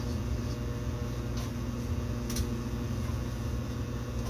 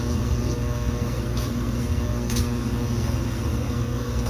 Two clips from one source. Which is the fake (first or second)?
second